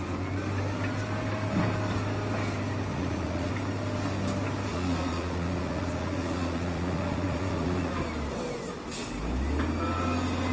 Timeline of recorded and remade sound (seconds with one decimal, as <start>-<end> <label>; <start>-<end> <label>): 0.0-2.9 recorded; 2.9-3.5 remade; 3.5-4.7 recorded; 4.7-7.9 remade; 7.9-10.5 recorded